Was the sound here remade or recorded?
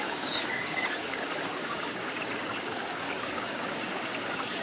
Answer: remade